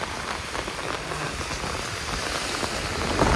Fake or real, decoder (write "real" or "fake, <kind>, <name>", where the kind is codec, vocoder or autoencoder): real